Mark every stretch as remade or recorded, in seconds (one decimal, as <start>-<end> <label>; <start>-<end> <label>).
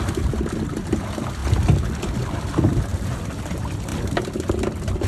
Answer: 0.0-5.1 recorded